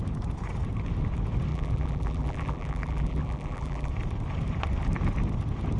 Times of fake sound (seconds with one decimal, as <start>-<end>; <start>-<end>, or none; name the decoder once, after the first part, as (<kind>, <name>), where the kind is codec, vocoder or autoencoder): 1.5-3.9 (vocoder, BigVGAN v2)